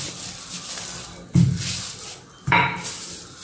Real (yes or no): yes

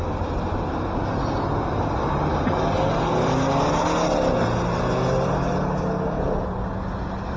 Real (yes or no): yes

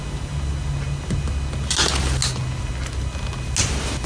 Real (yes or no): yes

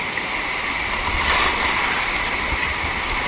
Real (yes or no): yes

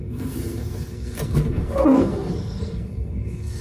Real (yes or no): no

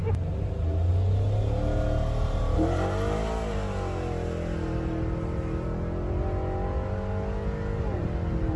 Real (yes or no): yes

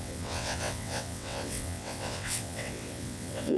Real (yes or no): no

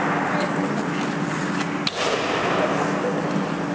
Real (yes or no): yes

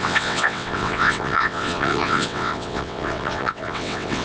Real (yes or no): no